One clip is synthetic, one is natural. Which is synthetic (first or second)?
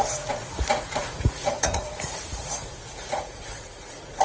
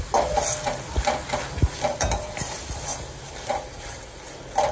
first